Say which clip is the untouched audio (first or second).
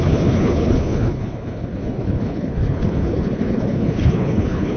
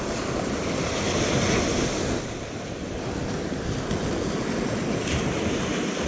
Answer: second